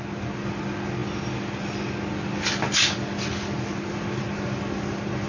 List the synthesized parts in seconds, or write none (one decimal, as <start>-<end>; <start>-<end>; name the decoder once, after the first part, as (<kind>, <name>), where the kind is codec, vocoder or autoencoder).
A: none